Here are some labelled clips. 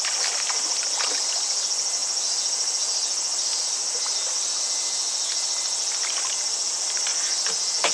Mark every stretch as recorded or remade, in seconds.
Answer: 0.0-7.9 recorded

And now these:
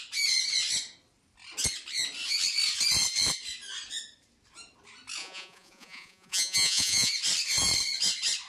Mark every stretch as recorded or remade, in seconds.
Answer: 0.0-5.2 recorded; 5.2-7.1 remade; 7.1-8.5 recorded

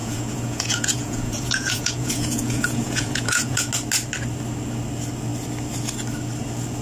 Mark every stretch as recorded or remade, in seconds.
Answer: 0.0-3.7 remade; 3.7-6.8 recorded